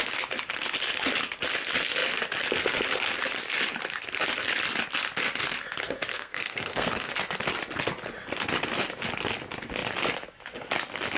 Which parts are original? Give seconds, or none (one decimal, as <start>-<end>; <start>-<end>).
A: 0.0-6.1; 7.1-11.2